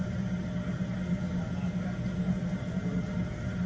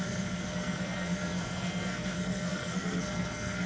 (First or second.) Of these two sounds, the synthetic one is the second